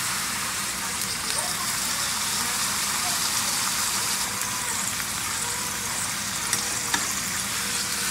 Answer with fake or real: fake